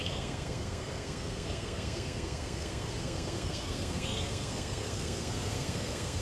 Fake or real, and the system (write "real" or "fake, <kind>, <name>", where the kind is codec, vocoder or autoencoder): fake, codec, SNAC